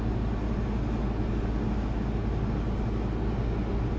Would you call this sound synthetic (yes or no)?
no